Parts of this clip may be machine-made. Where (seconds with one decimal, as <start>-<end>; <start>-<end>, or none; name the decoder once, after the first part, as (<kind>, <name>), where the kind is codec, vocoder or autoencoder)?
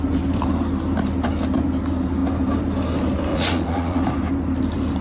3.3-4.0 (vocoder, Vocos)